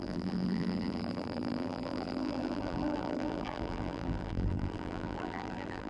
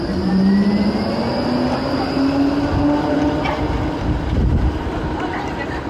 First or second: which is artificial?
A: first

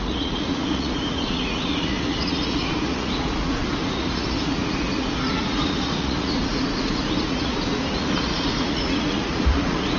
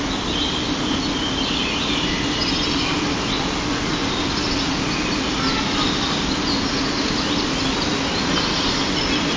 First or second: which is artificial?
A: first